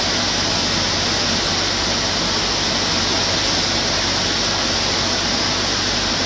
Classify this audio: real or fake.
real